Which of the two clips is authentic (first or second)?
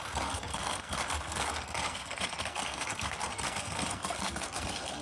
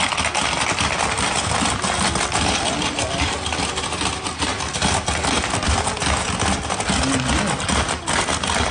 second